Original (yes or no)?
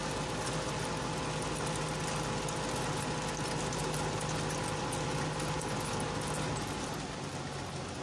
yes